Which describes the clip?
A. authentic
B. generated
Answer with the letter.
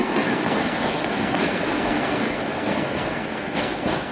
B